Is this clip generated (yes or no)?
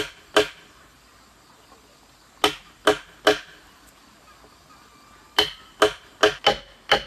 no